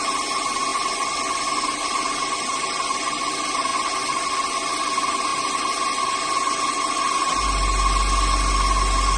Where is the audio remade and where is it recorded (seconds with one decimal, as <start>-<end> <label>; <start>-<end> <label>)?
0.0-9.2 recorded